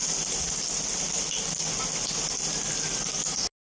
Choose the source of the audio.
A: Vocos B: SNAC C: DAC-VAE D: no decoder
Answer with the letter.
D